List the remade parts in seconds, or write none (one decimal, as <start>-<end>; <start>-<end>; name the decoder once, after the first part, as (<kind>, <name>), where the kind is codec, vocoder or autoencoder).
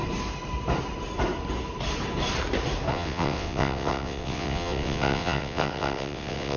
2.9-6.6 (vocoder, WaveNeXt)